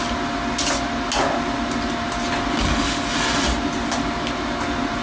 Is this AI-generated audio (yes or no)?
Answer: no